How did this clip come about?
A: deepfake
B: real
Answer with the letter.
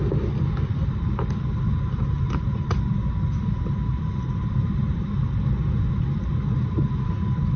B